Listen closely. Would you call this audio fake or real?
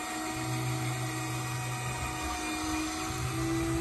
real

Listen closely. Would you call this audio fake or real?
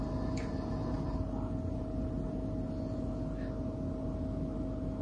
real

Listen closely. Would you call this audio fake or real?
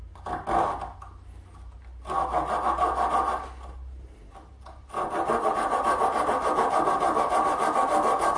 real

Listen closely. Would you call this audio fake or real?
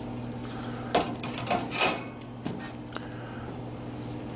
real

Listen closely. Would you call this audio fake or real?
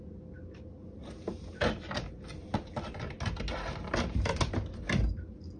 real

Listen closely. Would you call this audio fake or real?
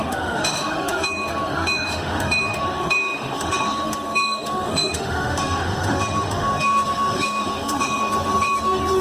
fake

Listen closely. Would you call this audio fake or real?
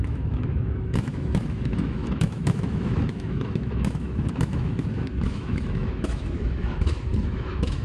fake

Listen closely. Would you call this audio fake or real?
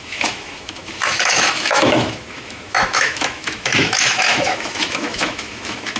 fake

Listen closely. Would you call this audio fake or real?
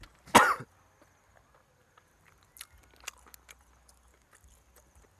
real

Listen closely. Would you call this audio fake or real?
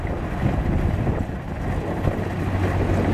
real